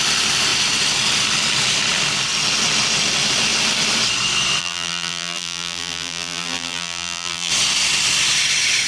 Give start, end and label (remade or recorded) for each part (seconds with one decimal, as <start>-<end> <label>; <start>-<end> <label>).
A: 0.0-4.6 recorded; 4.6-7.5 remade; 7.5-8.9 recorded